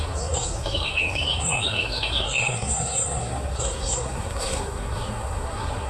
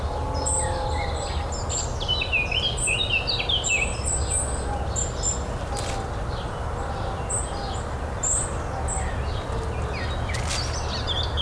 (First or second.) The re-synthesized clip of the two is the first